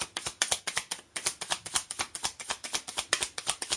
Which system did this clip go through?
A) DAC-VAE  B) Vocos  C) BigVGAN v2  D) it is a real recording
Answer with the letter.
D